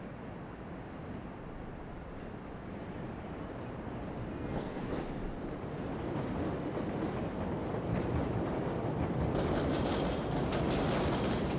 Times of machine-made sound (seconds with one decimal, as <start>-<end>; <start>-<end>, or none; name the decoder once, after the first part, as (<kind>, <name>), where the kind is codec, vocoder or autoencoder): 4.3-4.9 (codec, SNAC)